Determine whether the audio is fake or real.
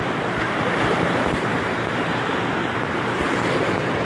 fake